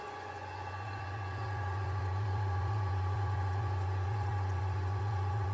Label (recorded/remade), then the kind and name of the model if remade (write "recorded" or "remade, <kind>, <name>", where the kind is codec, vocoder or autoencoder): remade, vocoder, Vocos